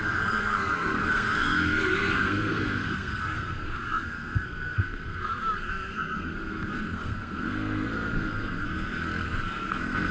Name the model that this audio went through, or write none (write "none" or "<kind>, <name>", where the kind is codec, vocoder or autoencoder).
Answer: codec, SNAC